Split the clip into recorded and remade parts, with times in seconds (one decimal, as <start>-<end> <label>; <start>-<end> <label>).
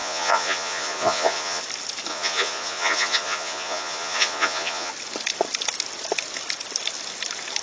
0.0-1.6 remade; 1.6-2.1 recorded; 2.1-4.9 remade; 4.9-7.6 recorded